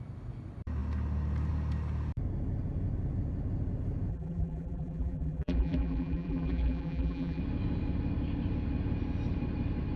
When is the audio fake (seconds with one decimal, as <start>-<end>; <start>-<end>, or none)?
4.1-7.4